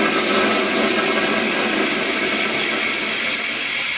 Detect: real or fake real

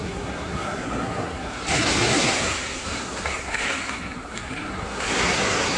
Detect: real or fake fake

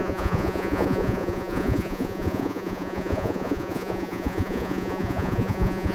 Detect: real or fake fake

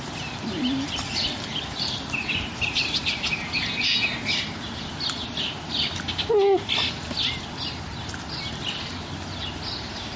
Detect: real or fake real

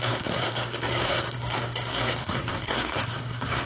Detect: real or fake fake